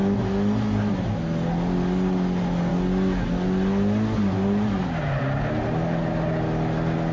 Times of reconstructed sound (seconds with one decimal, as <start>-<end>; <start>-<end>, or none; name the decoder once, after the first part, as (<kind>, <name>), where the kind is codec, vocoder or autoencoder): none